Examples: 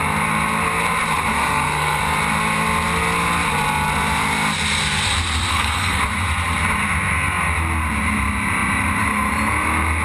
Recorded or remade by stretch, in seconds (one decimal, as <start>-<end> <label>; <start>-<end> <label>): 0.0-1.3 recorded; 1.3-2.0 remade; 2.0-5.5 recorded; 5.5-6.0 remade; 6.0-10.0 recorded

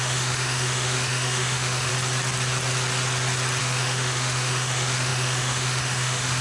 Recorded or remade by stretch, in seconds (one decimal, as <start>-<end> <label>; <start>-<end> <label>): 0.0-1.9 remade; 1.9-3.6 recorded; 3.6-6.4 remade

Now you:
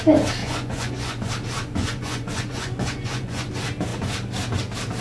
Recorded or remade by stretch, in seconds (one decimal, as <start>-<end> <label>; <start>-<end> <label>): 0.0-0.4 recorded; 0.4-1.3 remade; 1.3-1.8 recorded; 1.8-3.5 remade; 3.5-5.0 recorded

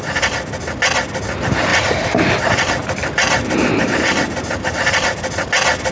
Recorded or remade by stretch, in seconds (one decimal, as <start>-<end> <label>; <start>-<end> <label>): 0.0-1.7 recorded; 1.7-2.3 remade; 2.3-2.8 recorded; 2.8-4.8 remade; 4.8-5.9 recorded

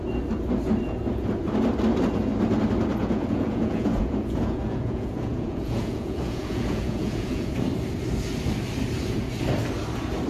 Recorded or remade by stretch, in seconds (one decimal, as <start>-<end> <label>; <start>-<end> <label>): 0.0-3.0 recorded; 3.0-7.5 remade; 7.5-10.3 recorded

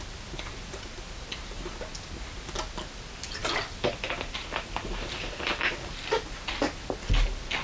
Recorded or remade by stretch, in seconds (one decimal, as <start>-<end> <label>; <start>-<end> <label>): 0.0-7.6 recorded

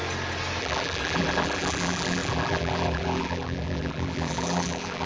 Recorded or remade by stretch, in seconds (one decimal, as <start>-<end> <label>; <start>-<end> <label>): 0.0-0.6 recorded; 0.6-5.1 remade